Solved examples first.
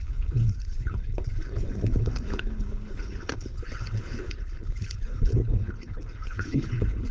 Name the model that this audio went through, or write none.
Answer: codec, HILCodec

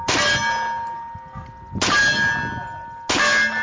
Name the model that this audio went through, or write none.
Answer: none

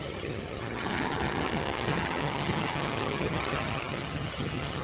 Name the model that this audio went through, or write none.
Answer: vocoder, HiFi-GAN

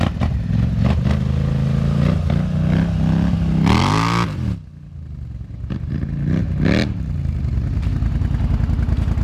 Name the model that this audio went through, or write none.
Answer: none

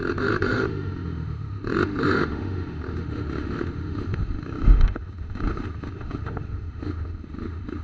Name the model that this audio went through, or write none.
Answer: autoencoder, DAC-VAE